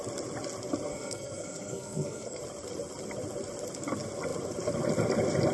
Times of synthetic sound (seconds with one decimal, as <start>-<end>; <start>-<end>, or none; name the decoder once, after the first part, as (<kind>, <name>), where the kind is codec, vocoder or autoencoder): 0.9-2.4 (codec, SNAC)